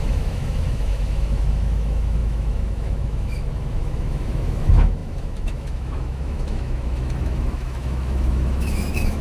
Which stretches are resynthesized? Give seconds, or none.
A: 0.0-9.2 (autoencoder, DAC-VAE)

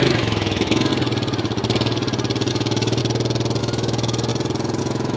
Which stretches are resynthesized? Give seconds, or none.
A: 0.0-0.9 (autoencoder, DAC-VAE); 2.5-3.0; 3.6-4.3; 4.8-5.2

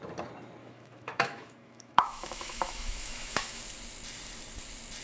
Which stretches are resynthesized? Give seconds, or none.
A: 0.6-3.6 (autoencoder, DAC-VAE)

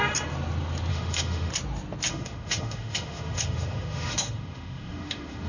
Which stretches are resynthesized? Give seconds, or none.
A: 0.9-1.5 (autoencoder, DAC-VAE); 2.1-5.5

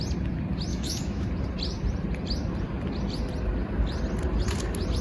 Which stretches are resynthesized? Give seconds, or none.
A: 0.7-1.3 (autoencoder, DAC-VAE)

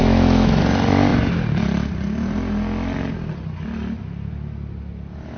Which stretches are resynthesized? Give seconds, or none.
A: 0.0-0.6 (autoencoder, DAC-VAE)